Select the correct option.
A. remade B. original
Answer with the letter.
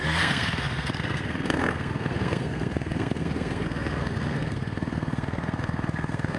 A